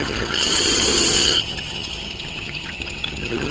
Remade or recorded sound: remade